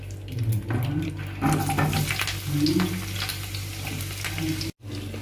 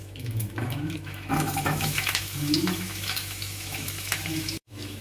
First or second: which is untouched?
first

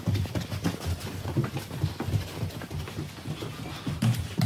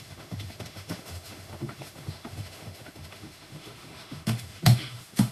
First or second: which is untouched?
first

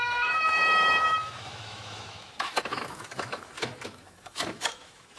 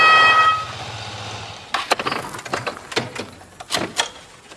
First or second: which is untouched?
second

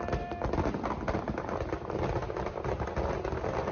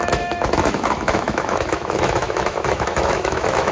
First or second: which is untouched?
first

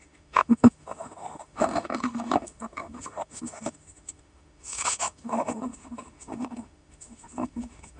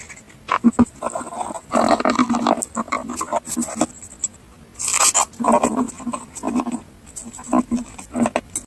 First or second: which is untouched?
second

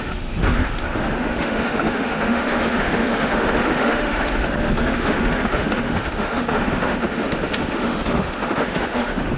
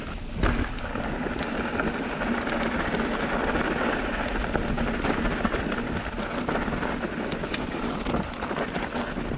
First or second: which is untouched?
second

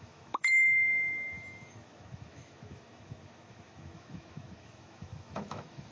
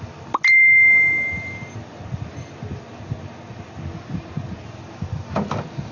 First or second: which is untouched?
second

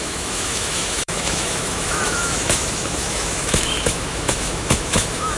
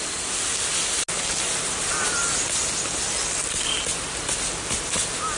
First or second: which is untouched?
second